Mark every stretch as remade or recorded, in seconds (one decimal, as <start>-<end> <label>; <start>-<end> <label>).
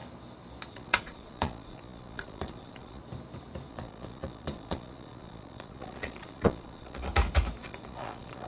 0.0-0.7 recorded; 0.7-3.0 remade; 3.0-3.7 recorded; 3.7-7.1 remade; 7.1-7.6 recorded; 7.6-8.5 remade